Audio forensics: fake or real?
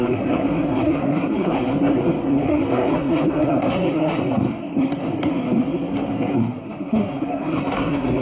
fake